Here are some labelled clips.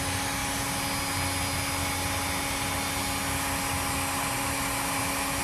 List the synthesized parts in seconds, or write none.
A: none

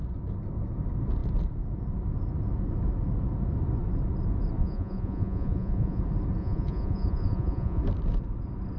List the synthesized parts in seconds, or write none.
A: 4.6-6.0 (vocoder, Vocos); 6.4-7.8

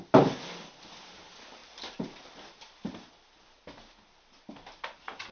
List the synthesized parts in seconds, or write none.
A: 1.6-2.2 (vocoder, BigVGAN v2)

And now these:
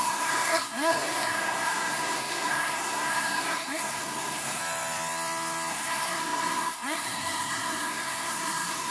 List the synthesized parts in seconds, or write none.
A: 0.0-4.6 (codec, SNAC); 5.7-8.9

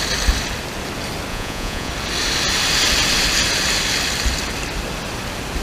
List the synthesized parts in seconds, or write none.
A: 1.3-1.9 (vocoder, Vocos)

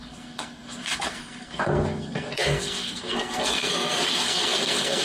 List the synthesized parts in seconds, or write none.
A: 0.0-5.0 (codec, SNAC)

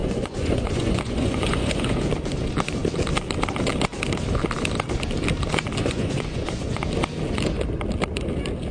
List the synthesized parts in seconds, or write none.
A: 0.0-2.0 (vocoder, Vocos); 5.8-6.8

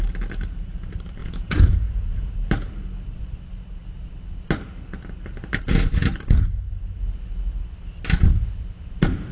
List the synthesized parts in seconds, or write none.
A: 1.2-2.3 (vocoder, Vocos)